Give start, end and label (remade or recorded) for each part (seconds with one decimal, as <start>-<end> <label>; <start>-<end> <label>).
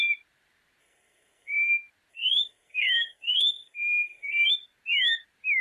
0.0-0.8 recorded; 0.8-1.7 remade; 1.7-2.1 recorded; 2.1-4.5 remade; 4.5-5.6 recorded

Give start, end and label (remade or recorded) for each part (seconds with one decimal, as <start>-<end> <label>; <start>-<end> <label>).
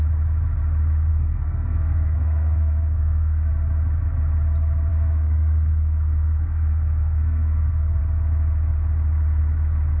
0.0-1.1 recorded; 1.1-3.5 remade; 3.5-4.9 recorded; 4.9-8.0 remade; 8.0-10.0 recorded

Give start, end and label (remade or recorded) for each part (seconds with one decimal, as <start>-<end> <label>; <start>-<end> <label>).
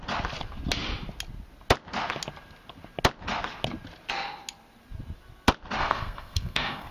0.0-5.8 recorded; 5.8-6.9 remade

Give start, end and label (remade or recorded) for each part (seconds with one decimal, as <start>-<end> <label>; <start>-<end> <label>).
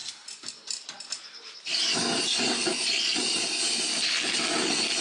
0.0-5.0 recorded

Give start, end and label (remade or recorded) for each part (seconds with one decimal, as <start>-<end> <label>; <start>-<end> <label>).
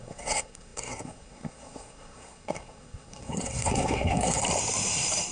0.0-4.4 remade; 4.4-5.3 recorded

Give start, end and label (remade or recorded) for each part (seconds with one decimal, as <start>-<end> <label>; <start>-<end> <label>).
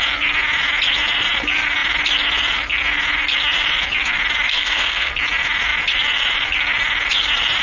0.0-4.5 recorded; 4.5-5.1 remade; 5.1-7.6 recorded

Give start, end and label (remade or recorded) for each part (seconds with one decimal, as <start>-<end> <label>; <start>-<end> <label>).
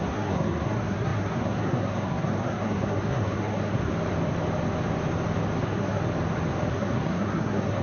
0.0-3.9 remade; 3.9-5.6 recorded; 5.6-6.0 remade; 6.0-6.7 recorded; 6.7-7.8 remade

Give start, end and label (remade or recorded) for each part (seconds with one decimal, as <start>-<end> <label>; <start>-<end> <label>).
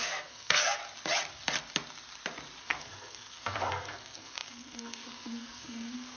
0.0-0.8 remade; 0.8-2.6 recorded; 2.6-6.2 remade